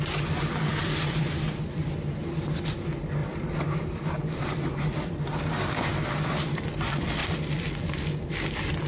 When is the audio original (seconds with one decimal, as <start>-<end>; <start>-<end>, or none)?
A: 0.0-0.7; 2.2-3.2; 5.4-7.2